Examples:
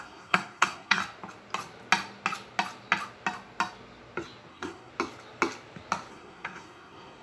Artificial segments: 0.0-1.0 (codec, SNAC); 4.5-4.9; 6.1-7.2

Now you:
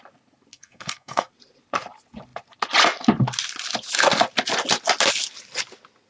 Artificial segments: 0.5-1.3 (codec, SNAC)

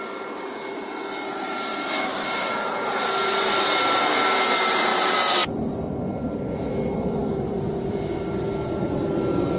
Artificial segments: 1.7-4.0 (vocoder, BigVGAN v2); 4.9-5.6; 7.2-9.0

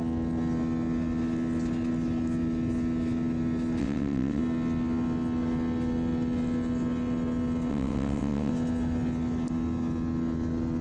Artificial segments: 3.8-4.4 (vocoder, WaveNeXt); 7.7-8.5